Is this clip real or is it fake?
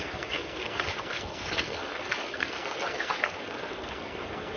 fake